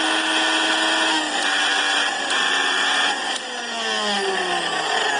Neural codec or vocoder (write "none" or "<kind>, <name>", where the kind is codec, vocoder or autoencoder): none